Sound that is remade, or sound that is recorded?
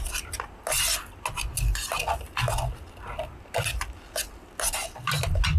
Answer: recorded